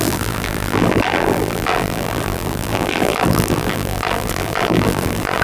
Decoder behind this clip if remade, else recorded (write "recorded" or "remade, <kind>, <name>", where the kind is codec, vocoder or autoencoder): remade, vocoder, BigVGAN v2